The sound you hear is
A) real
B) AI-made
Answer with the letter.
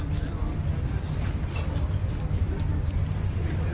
A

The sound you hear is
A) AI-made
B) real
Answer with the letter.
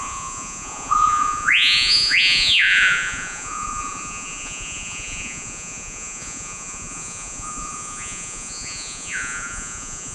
A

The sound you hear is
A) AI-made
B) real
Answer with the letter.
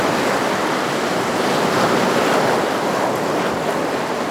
B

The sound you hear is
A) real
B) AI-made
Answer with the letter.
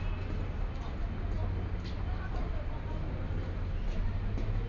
A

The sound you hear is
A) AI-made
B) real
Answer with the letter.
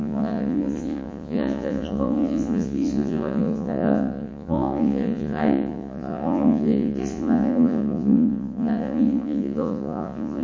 A